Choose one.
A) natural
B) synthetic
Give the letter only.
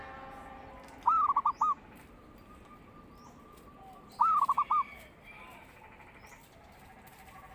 A